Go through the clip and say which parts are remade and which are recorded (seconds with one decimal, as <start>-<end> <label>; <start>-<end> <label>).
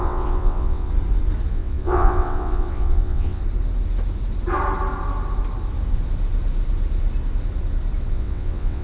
0.0-0.9 remade; 0.9-1.5 recorded; 1.5-3.4 remade; 3.4-8.1 recorded; 8.1-8.8 remade